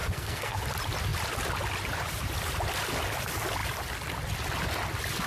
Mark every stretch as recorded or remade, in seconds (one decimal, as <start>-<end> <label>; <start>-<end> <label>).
0.0-0.6 remade; 0.6-5.3 recorded